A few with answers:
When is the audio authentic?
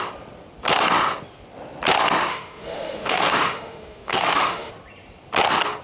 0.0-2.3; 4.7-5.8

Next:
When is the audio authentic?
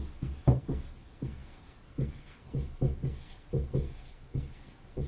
none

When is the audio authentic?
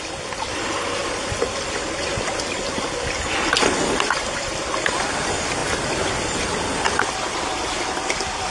3.6-4.1; 5.6-7.0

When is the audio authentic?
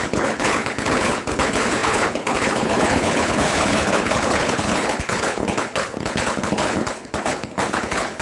none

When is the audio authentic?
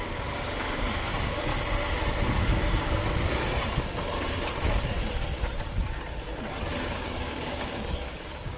1.5-2.4; 3.0-6.8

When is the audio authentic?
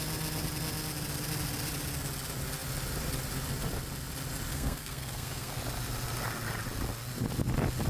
0.0-4.5; 5.6-7.9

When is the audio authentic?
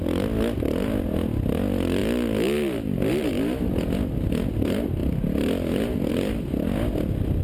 0.0-7.4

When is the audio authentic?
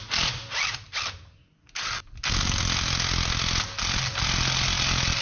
0.0-5.2